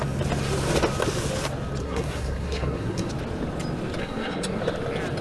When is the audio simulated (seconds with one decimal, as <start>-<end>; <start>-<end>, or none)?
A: 1.8-3.1; 4.0-4.6